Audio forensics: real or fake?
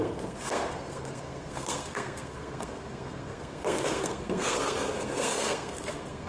fake